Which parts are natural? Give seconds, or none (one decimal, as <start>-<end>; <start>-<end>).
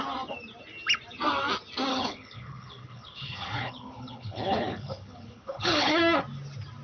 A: 0.0-1.9; 6.0-6.8